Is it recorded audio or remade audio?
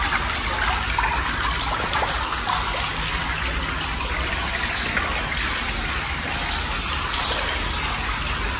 recorded